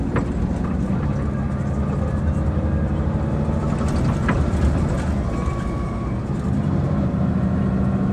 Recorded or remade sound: recorded